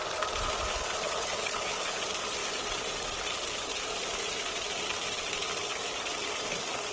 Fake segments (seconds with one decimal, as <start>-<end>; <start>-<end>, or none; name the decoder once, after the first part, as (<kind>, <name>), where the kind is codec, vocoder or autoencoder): 1.0-2.0 (codec, HILCodec)